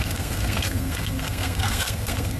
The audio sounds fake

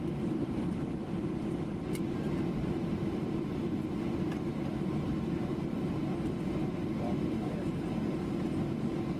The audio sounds real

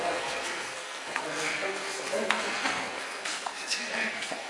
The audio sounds fake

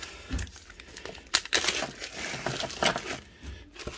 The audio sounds real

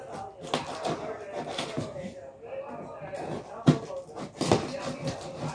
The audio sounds real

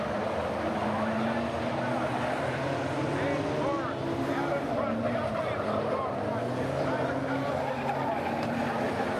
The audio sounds real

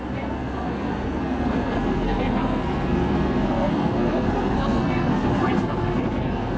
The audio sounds fake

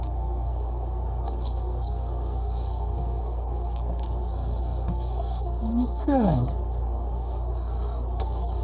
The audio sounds fake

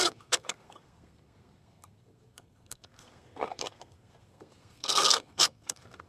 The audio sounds fake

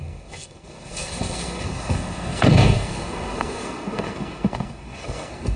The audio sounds fake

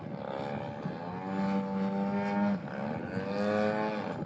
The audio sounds real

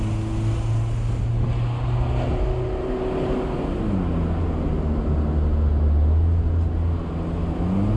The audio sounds real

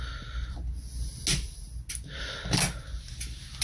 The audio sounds real